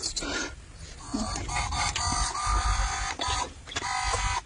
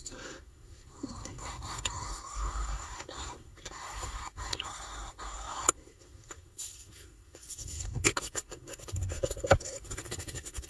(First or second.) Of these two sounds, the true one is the first